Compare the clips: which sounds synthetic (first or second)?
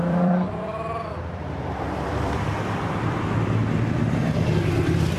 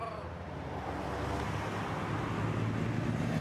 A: first